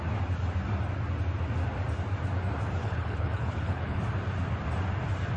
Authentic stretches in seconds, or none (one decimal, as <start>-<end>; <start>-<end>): 0.0-2.8; 4.0-5.4